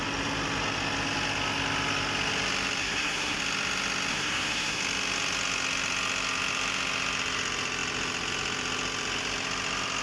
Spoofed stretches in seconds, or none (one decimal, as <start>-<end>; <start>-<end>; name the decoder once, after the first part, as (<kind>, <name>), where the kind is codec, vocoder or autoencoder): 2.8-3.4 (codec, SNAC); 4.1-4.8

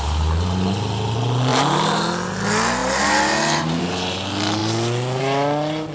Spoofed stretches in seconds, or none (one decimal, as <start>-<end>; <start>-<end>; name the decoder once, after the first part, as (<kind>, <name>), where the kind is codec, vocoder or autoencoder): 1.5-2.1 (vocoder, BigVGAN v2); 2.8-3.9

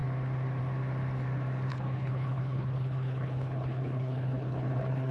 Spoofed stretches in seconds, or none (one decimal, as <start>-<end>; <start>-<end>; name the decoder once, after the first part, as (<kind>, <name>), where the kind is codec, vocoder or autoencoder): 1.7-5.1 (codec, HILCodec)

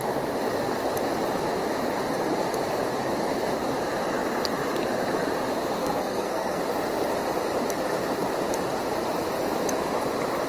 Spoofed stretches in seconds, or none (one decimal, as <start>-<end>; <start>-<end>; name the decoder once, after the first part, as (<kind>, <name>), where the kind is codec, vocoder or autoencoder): 5.8-6.6 (codec, SNAC)

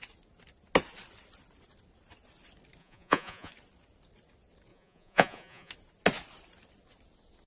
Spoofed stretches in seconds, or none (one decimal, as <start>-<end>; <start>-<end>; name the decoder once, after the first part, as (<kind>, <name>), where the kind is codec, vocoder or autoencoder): 2.8-3.5 (vocoder, Vocos); 4.7-5.7

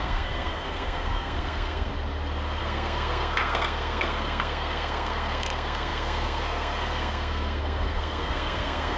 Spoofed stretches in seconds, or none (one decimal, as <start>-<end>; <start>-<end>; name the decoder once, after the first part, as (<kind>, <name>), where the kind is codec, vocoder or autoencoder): 0.0-1.9 (codec, SNAC); 2.6-9.0